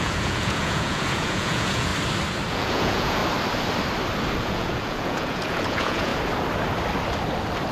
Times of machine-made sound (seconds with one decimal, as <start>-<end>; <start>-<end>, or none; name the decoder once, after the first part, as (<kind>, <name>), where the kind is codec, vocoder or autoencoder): 0.0-1.9 (vocoder, Vocos); 2.5-3.2; 4.4-6.1